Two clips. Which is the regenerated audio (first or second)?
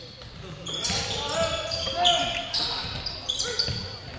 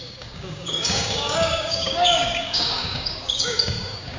second